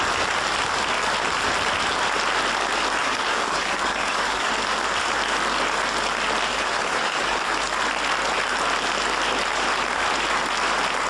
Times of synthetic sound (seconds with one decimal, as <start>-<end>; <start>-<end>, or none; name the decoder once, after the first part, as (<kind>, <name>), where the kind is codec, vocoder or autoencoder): 3.0-4.5 (codec, DAC); 6.5-7.5